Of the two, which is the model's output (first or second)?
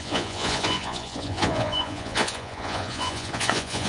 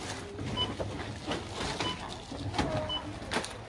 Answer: first